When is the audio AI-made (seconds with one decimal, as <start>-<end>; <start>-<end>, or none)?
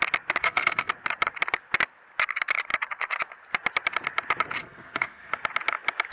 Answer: 0.4-0.9; 4.6-5.3